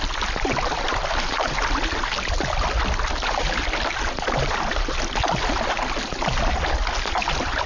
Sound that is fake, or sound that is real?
real